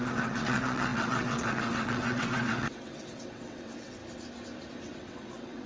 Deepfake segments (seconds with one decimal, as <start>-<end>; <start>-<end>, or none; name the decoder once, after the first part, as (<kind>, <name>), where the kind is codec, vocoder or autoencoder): 0.0-4.0 (vocoder, WaveNeXt); 4.7-5.7